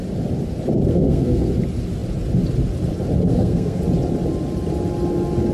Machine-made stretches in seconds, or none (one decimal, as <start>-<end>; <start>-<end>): 0.9-1.5; 3.3-3.8